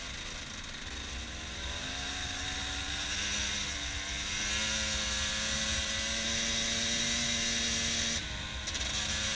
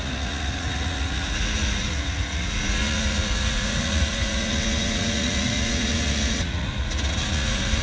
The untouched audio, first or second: first